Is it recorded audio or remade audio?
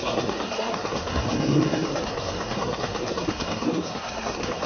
remade